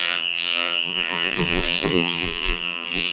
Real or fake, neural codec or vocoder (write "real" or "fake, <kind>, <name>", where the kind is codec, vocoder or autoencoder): fake, vocoder, BigVGAN v2